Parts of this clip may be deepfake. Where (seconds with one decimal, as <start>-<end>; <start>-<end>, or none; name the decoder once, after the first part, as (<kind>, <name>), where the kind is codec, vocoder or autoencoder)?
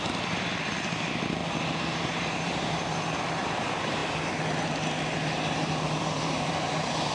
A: 0.0-1.4 (vocoder, BigVGAN v2); 2.2-4.0; 5.4-7.1